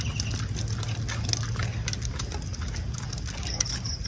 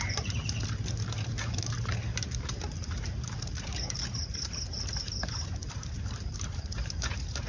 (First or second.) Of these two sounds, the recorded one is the first